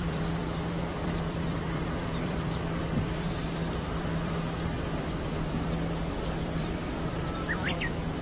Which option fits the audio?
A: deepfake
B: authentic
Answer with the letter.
A